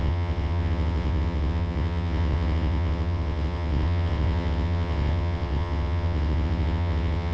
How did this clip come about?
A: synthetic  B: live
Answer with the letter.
A